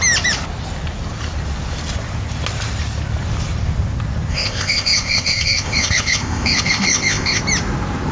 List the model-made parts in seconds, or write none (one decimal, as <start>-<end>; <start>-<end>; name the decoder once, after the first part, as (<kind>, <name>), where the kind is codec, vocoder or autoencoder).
4.3-7.4 (codec, ZipCodec)